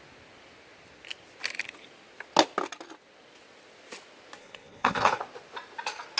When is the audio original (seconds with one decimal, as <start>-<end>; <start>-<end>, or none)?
0.0-4.4; 5.2-6.2